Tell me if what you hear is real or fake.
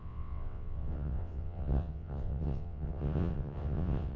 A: fake